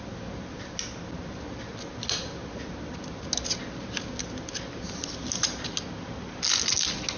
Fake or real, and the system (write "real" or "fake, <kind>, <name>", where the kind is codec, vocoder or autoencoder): real